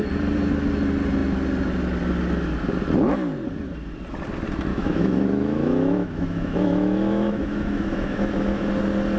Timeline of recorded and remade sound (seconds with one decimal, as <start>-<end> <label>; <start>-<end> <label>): 0.0-4.7 recorded; 4.7-8.7 remade; 8.7-9.2 recorded